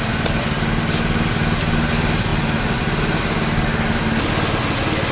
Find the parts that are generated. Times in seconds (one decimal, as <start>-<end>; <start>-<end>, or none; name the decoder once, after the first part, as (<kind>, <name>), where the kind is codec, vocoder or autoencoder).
none